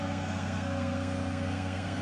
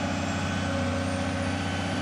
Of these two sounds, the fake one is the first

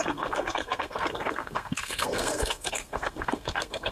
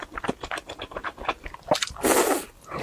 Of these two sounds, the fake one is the first